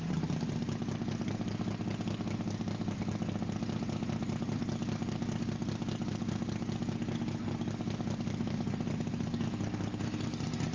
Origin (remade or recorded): recorded